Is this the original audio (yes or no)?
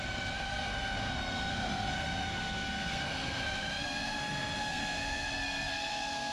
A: no